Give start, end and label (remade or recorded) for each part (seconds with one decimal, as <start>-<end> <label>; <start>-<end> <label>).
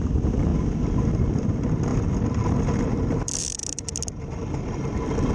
0.0-0.5 remade; 0.5-1.2 recorded; 1.2-1.9 remade; 1.9-3.1 recorded; 3.1-3.6 remade; 3.6-4.2 recorded; 4.2-5.3 remade